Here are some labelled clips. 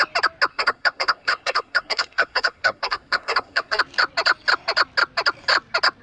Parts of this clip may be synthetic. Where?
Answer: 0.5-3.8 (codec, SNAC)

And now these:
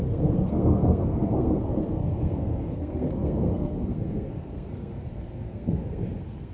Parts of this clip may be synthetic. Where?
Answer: 0.0-6.5 (codec, SNAC)